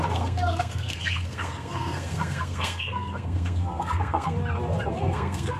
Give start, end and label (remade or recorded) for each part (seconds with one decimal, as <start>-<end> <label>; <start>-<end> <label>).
0.0-4.4 remade; 4.4-4.9 recorded; 4.9-5.6 remade

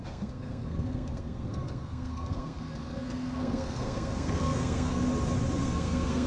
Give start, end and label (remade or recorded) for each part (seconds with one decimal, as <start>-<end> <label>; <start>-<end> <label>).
0.0-5.0 remade; 5.0-5.6 recorded; 5.6-6.3 remade

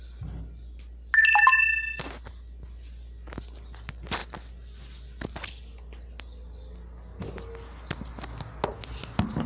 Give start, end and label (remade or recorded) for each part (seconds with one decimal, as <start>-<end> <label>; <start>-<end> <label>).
0.0-9.5 recorded

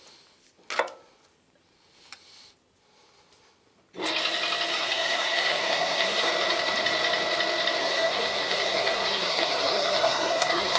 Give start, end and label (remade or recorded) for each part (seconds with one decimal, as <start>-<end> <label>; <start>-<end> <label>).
0.0-4.7 recorded; 4.7-6.3 remade; 6.3-7.8 recorded; 7.8-10.8 remade

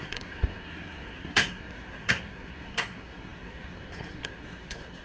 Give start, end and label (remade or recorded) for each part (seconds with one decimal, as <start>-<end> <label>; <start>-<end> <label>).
0.0-5.0 remade